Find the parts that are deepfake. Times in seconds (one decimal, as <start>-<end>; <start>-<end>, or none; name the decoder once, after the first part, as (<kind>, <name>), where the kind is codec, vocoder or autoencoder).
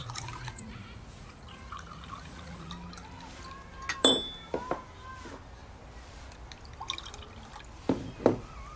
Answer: 0.0-2.7 (vocoder, Vocos)